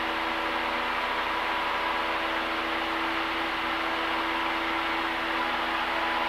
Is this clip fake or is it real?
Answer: real